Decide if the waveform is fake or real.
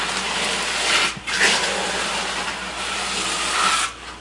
real